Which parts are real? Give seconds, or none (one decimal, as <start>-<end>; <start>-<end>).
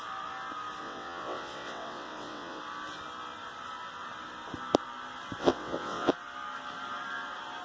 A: 0.0-0.8; 2.6-5.4; 6.1-7.6